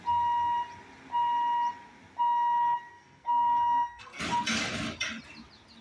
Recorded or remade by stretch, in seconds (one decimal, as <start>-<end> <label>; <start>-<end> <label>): 0.0-2.9 recorded; 2.9-4.2 remade; 4.2-5.8 recorded